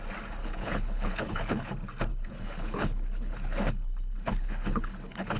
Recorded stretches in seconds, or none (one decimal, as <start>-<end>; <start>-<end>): 0.0-0.4; 1.7-2.1